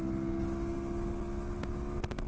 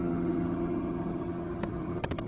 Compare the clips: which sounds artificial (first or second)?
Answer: second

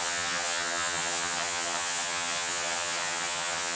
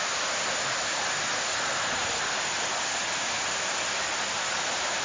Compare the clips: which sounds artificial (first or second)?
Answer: first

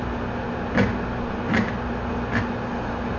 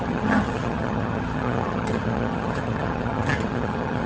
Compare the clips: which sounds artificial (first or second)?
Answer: second